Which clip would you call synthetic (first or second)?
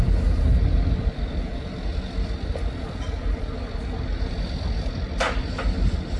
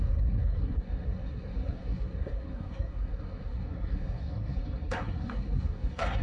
second